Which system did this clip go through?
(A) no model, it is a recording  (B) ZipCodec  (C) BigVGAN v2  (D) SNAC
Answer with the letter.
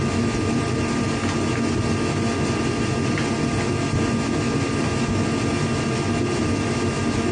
A